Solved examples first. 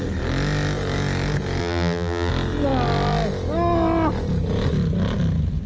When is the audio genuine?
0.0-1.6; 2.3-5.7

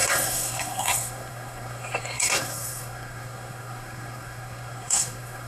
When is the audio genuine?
none

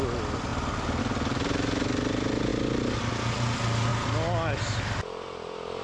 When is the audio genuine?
0.0-5.8

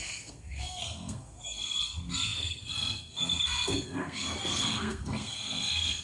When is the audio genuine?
none

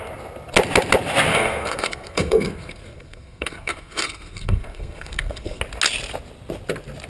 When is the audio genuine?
0.0-1.3; 5.6-7.1

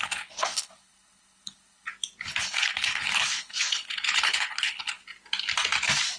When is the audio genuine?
1.9-2.4; 5.0-6.2

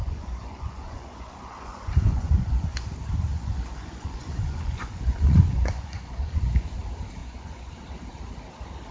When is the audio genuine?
2.9-3.3; 6.8-7.2; 7.7-8.9